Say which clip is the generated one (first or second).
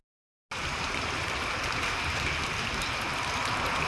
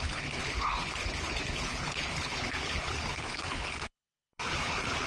second